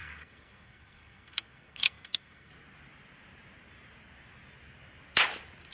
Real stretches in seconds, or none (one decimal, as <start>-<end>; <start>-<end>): 2.5-5.7